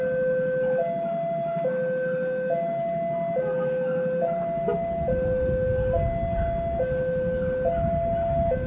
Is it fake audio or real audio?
real